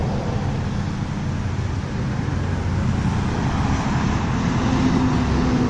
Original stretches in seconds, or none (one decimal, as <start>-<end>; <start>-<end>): 0.0-5.7